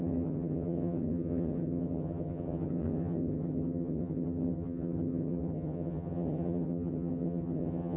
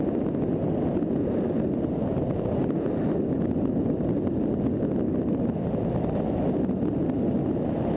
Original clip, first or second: second